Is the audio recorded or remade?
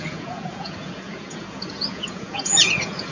remade